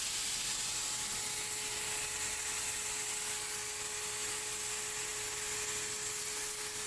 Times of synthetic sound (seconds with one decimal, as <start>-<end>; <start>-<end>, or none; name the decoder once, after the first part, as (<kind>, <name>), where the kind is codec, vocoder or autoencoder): none